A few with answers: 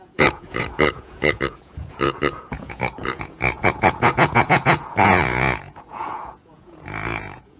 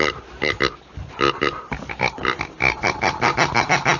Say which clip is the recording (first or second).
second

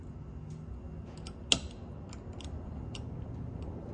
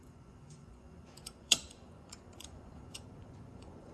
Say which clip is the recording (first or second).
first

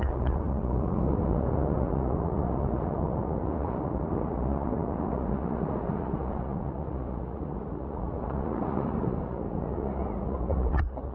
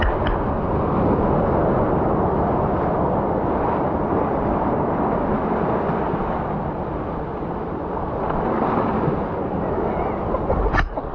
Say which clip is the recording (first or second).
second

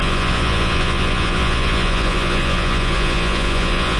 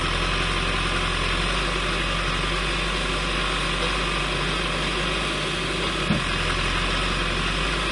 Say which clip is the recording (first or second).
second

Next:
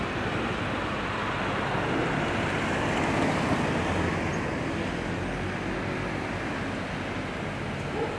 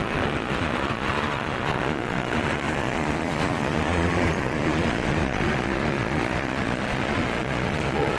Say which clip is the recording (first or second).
first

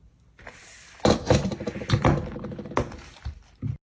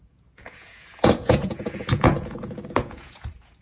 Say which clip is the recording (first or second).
first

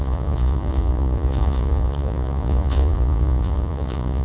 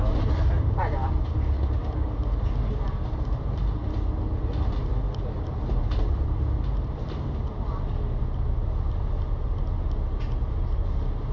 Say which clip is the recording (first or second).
second